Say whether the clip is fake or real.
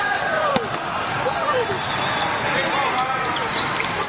real